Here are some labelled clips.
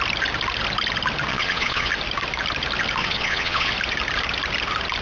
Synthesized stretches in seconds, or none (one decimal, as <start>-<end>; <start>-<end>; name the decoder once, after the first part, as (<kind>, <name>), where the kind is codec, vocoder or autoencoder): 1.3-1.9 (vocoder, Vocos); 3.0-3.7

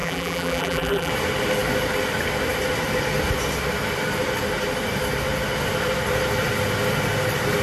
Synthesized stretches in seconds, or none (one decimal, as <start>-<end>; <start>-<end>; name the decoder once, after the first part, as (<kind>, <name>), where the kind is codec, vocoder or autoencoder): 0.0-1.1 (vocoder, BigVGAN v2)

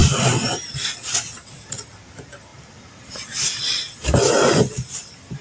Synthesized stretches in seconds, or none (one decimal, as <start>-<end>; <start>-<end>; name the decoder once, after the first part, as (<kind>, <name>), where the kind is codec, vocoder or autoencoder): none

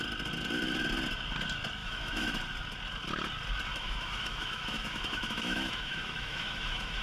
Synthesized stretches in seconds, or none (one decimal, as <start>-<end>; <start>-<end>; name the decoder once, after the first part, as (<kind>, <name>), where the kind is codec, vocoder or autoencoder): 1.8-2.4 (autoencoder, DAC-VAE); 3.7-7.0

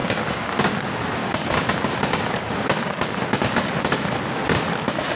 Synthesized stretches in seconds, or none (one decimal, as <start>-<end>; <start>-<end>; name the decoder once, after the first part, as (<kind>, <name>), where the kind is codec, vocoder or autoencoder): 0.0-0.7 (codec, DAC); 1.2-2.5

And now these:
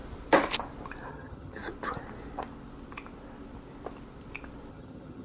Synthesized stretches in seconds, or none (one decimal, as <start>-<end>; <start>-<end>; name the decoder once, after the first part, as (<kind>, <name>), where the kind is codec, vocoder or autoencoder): 1.1-1.6 (vocoder, HiFi-GAN); 4.7-5.2

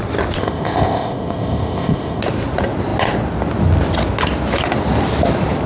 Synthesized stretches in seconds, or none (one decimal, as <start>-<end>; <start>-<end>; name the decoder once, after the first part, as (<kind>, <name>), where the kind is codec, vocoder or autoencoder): 0.4-2.2 (codec, ZipCodec)